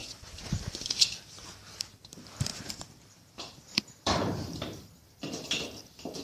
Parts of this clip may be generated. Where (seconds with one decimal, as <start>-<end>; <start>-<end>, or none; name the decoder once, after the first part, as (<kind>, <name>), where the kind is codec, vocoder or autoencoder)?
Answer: 2.5-5.2 (vocoder, BigVGAN v2)